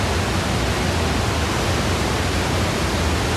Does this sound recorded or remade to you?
recorded